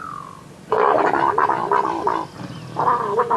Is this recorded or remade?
recorded